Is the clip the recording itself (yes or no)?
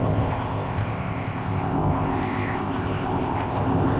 no